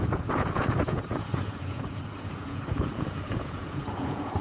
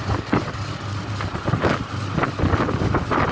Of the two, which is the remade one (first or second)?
first